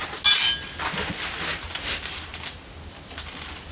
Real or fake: real